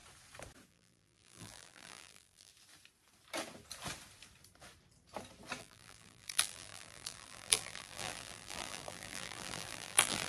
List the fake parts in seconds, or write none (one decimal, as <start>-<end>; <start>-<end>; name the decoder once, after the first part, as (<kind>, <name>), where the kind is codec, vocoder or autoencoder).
0.7-2.5 (vocoder, BigVGAN v2); 5.6-10.3